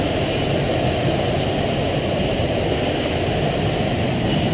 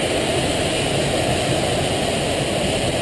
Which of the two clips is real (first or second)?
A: first